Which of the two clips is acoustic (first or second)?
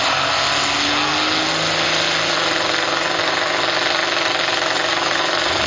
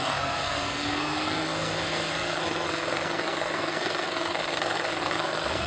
first